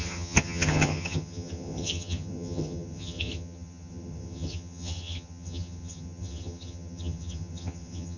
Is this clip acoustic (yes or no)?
no